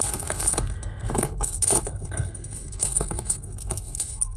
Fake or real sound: fake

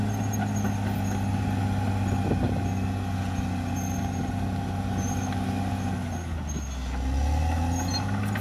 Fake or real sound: real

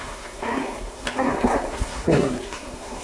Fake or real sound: fake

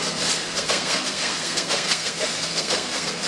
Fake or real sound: fake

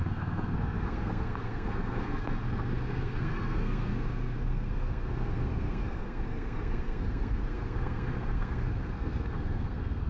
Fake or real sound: fake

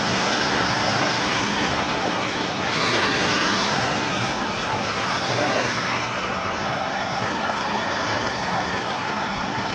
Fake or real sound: fake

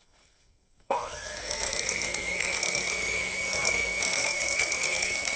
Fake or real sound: fake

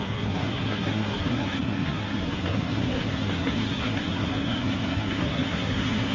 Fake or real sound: fake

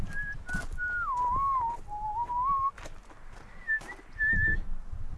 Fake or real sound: real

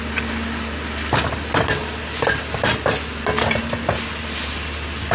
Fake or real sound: real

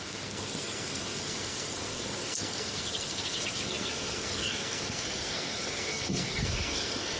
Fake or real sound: fake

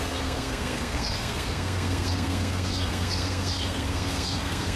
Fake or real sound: fake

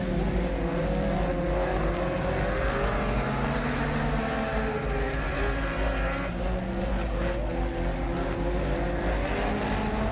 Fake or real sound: real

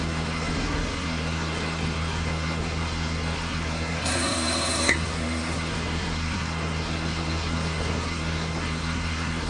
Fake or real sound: fake